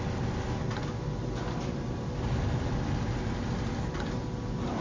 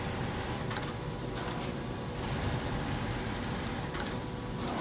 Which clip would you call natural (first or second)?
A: first